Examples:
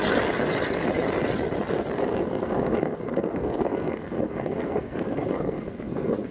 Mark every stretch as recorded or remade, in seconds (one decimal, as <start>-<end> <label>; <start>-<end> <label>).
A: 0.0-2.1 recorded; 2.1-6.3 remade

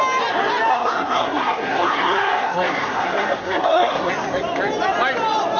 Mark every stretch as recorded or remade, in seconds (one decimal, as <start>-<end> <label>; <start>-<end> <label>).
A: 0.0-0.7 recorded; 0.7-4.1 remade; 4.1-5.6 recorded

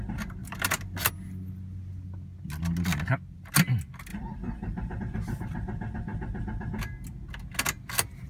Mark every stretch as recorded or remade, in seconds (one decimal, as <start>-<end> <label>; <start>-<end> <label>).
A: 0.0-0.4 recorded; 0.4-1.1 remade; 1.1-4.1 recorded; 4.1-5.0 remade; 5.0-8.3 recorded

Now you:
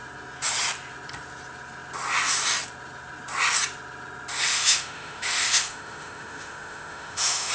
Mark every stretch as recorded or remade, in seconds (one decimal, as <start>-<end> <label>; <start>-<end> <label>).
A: 0.0-4.5 recorded; 4.5-7.5 remade

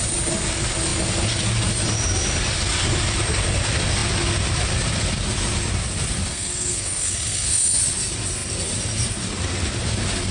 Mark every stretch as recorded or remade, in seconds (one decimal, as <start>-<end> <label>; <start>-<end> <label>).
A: 0.0-6.3 recorded; 6.3-7.8 remade; 7.8-10.3 recorded

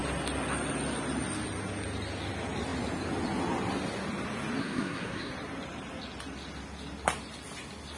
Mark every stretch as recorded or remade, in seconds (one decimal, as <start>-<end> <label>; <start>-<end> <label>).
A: 0.0-4.6 recorded; 4.6-5.3 remade; 5.3-8.0 recorded